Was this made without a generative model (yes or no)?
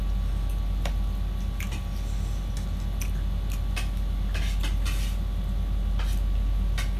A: yes